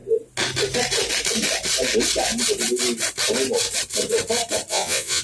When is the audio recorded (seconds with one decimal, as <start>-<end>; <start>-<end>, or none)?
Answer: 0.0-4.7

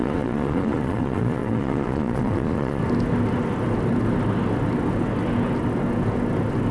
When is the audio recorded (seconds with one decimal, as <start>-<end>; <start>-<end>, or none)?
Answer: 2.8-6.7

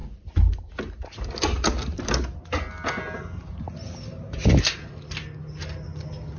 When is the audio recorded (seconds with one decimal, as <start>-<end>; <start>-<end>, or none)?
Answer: 0.0-6.4